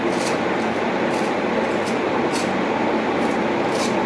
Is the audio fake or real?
real